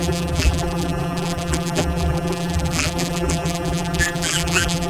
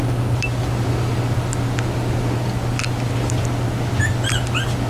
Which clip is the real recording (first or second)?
second